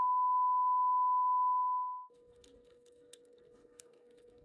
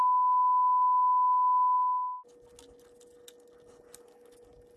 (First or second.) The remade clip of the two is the first